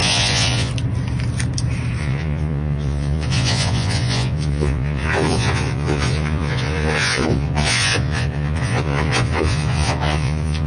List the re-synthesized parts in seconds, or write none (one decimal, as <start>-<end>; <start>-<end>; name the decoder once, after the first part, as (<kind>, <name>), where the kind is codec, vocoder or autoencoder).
0.0-0.7 (vocoder, Vocos); 2.0-10.7